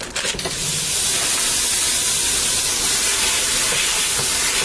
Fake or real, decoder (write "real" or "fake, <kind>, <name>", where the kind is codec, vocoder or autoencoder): real